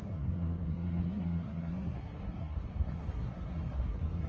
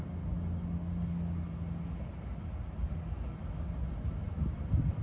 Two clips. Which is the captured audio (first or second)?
second